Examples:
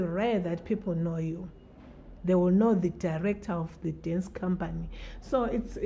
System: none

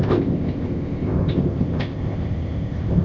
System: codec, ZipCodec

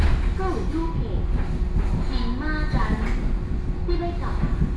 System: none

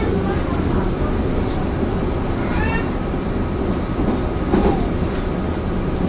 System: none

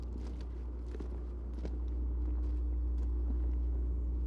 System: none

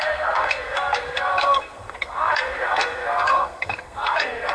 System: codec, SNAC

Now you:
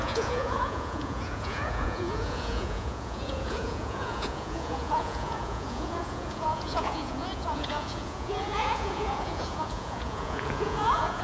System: vocoder, Vocos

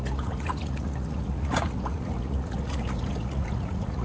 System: vocoder, Vocos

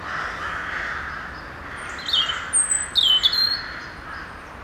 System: none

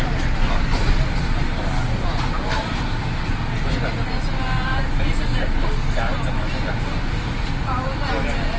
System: none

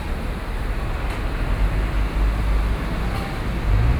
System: none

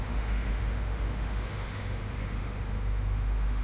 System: autoencoder, DAC-VAE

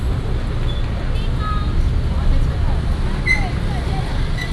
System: none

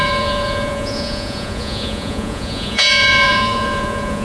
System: vocoder, Vocos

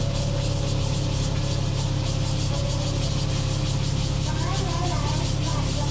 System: none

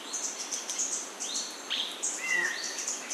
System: vocoder, BigVGAN v2